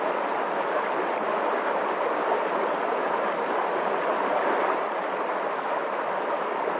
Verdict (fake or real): real